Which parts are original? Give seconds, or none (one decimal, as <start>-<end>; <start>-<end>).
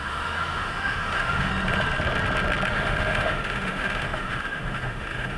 1.5-2.7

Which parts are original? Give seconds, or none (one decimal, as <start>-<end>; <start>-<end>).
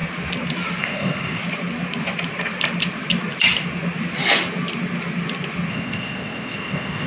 0.0-0.8; 1.4-5.7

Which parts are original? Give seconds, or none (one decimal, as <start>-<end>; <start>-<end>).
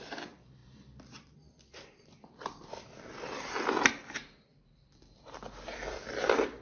none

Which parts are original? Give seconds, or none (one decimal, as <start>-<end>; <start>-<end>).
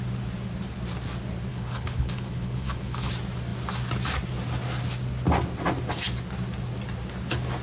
0.0-1.5; 3.1-7.6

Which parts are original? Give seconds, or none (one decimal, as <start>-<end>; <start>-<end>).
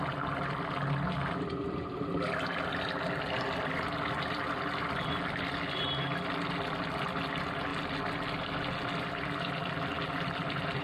0.0-10.8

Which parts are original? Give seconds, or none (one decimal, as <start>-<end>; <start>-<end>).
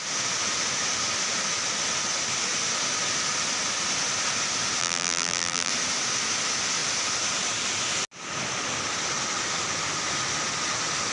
0.0-4.8; 5.7-11.1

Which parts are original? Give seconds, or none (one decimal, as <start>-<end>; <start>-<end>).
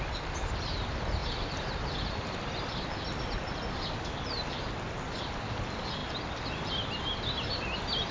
0.0-8.1